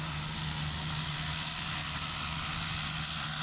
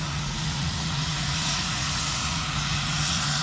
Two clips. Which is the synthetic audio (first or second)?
second